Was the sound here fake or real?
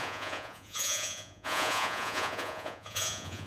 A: fake